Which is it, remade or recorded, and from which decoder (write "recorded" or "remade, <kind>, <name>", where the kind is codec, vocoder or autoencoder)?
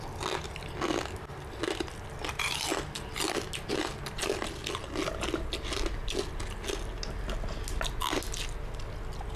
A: recorded